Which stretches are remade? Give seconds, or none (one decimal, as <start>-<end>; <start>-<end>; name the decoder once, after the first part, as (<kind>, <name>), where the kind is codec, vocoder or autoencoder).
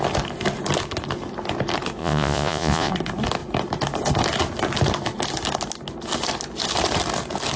2.0-2.9 (vocoder, Vocos)